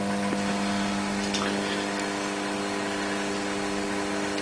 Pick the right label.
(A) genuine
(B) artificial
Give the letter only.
A